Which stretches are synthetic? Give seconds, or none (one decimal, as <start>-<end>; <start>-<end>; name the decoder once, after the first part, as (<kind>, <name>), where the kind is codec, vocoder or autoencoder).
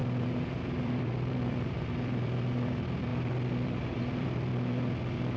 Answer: 0.0-4.5 (vocoder, BigVGAN v2)